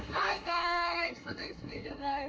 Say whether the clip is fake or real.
fake